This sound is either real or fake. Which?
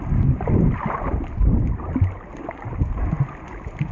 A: real